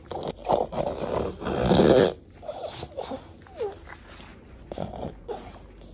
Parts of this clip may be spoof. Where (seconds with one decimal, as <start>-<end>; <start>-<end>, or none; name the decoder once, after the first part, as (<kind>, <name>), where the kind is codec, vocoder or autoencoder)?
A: 4.3-5.3 (vocoder, Vocos)